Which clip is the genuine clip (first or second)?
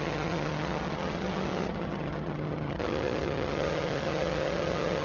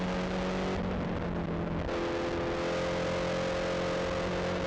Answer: second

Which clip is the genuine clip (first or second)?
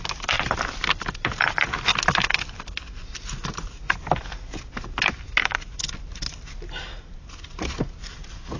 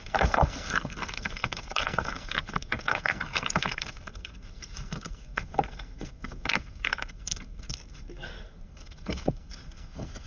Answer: first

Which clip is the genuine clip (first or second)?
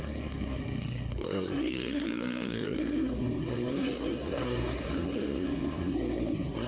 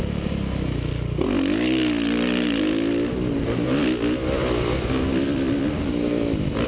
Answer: second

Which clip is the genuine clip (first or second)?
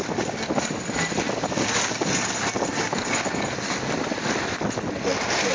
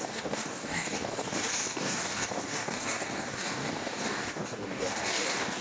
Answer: first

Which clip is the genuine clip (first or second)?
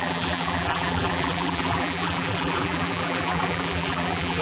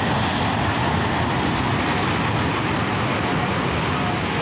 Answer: second